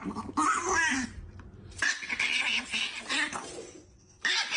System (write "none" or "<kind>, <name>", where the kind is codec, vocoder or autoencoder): none